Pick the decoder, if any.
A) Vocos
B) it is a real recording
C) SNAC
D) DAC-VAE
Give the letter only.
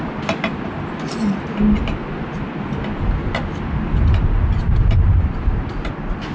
B